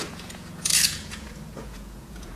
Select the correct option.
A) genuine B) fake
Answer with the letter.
B